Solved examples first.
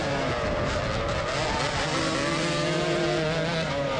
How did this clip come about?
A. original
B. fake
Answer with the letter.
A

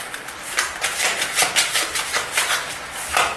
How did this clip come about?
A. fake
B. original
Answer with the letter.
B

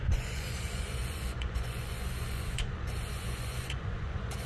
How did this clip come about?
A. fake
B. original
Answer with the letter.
A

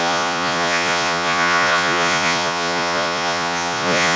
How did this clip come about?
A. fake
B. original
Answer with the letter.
A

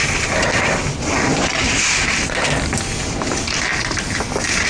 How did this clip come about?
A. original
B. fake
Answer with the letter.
A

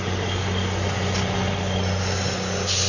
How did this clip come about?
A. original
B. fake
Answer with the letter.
A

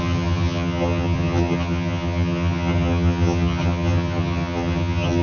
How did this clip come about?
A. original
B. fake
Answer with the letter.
B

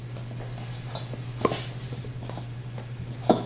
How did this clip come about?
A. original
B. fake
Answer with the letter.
A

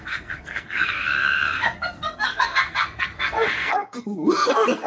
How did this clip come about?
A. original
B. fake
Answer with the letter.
B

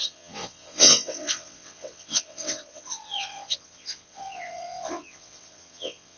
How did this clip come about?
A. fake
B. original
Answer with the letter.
A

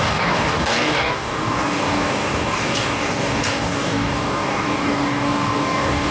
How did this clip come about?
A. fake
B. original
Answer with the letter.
A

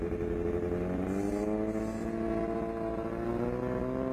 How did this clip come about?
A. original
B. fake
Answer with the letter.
A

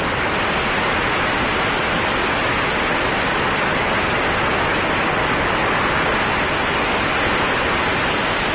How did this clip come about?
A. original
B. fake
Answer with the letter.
A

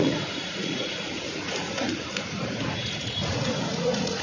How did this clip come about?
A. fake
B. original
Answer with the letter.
A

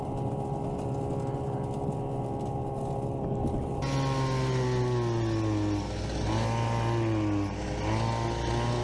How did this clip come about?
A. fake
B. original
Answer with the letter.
B